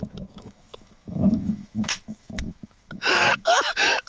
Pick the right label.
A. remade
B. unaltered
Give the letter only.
A